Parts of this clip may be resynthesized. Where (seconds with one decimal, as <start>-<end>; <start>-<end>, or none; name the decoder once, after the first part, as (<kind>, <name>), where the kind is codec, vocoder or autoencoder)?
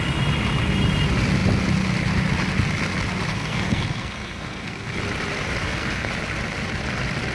3.3-5.0 (codec, SNAC); 5.6-6.1